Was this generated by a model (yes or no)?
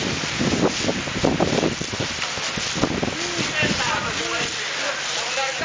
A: no